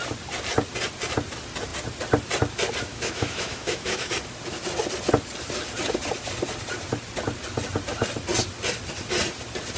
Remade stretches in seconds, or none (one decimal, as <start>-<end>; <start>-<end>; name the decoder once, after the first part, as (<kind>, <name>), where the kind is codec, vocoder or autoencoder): 2.9-4.1 (autoencoder, DAC-VAE)